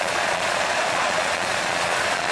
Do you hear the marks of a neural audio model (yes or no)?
yes